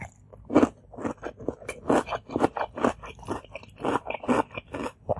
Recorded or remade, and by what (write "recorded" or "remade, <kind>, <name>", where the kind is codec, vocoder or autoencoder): recorded